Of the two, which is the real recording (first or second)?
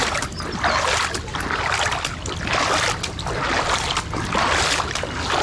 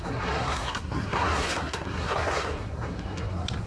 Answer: first